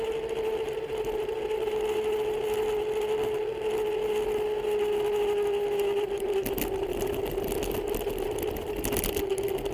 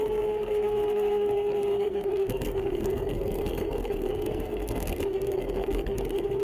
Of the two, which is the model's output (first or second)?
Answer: second